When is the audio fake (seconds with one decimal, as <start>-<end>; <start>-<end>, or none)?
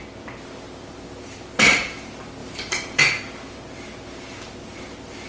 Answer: 2.4-3.0